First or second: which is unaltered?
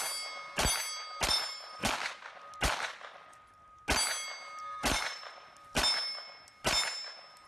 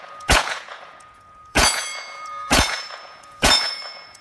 first